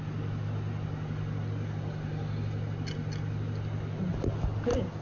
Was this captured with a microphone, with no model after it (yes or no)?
yes